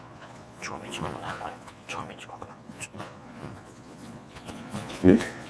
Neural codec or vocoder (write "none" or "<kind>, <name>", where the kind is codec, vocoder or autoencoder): vocoder, Vocos